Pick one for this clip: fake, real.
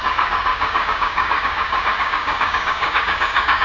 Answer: fake